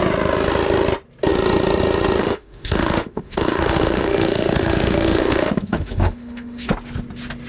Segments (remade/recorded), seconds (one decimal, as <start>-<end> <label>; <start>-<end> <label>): 0.0-2.2 recorded; 2.2-6.7 remade; 6.7-7.5 recorded